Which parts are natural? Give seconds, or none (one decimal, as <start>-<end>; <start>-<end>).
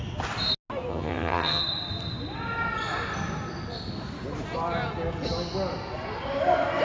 0.0-0.9; 1.6-6.8